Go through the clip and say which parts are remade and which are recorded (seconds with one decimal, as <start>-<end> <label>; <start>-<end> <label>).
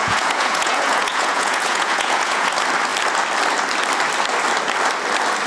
0.0-2.5 remade; 2.5-5.5 recorded